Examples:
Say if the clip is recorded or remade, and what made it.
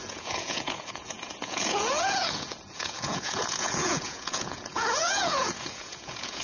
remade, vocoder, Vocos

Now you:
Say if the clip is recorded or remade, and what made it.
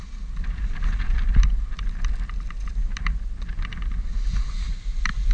recorded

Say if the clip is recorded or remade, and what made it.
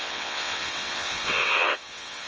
remade, vocoder, WaveNeXt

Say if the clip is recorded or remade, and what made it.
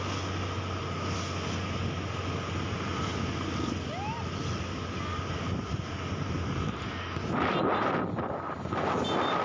recorded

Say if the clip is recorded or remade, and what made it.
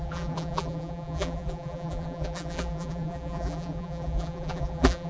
remade, vocoder, BigVGAN v2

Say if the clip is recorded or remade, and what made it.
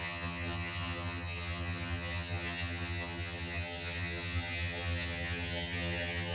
remade, vocoder, HiFi-GAN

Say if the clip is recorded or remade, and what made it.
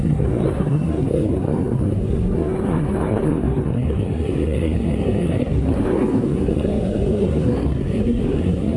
remade, codec, SNAC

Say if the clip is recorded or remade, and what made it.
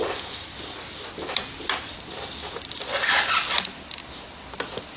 recorded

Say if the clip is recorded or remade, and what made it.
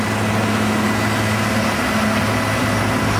recorded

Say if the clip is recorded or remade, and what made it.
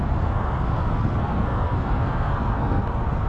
remade, codec, SNAC